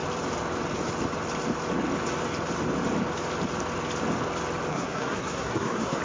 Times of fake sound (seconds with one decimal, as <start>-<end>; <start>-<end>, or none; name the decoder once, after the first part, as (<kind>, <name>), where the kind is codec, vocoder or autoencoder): 4.7-6.0 (codec, SNAC)